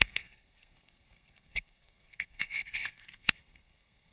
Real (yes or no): no